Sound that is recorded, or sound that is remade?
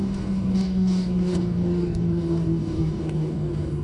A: remade